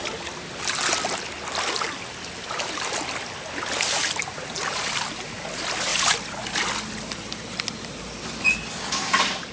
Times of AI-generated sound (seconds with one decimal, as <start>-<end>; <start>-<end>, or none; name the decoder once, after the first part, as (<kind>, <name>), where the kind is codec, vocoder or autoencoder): none